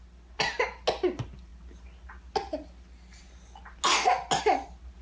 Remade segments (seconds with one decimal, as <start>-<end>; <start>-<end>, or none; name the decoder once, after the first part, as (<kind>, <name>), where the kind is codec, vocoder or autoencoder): none